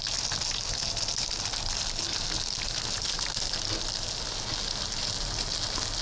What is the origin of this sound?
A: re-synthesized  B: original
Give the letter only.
B